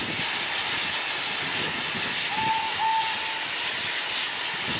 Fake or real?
real